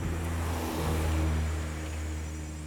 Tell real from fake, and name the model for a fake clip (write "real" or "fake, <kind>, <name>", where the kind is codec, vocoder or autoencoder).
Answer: real